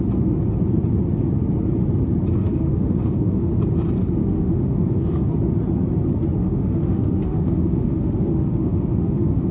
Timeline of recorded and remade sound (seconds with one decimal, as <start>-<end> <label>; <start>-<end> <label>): 0.0-2.4 recorded; 2.4-3.5 remade; 3.5-4.2 recorded; 4.2-5.3 remade; 5.3-6.4 recorded; 6.4-9.5 remade